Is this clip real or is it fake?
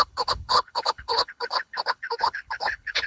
fake